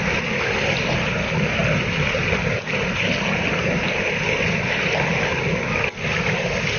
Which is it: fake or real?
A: real